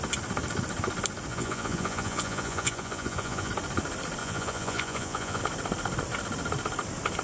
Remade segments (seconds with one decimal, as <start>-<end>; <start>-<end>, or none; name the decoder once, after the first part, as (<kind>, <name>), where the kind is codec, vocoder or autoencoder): 1.3-3.5 (vocoder, Vocos); 4.2-5.4